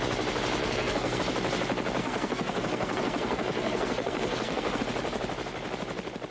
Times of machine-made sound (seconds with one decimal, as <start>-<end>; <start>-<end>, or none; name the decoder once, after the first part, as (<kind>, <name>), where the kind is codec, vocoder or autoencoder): 0.6-1.2 (codec, SNAC); 2.0-4.8